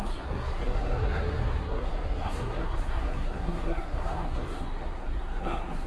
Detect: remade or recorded remade